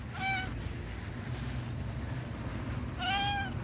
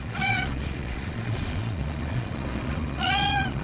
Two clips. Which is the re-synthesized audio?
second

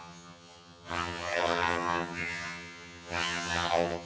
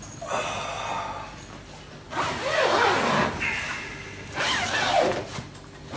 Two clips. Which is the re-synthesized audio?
first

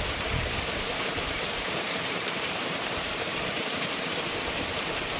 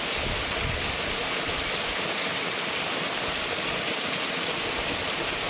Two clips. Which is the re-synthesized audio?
first